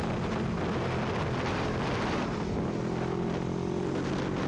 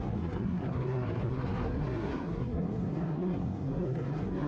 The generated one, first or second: second